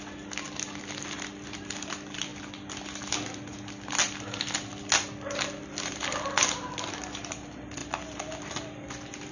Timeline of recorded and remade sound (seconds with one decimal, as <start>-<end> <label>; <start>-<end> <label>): 0.0-9.3 recorded